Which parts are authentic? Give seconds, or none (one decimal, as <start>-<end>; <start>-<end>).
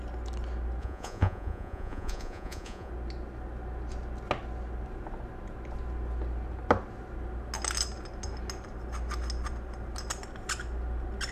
0.0-0.8; 2.9-11.3